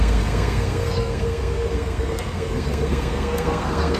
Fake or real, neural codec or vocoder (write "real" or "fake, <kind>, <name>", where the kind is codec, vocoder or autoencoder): fake, codec, SNAC